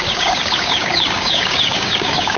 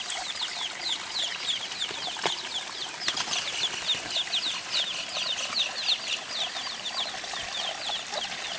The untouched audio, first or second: second